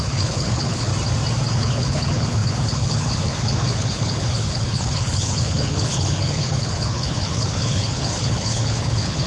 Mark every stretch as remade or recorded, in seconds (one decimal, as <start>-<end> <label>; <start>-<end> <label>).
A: 0.0-0.9 remade; 0.9-1.5 recorded; 1.5-9.3 remade